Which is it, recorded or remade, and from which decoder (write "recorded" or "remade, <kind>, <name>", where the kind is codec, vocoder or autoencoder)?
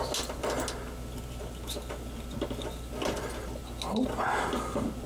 recorded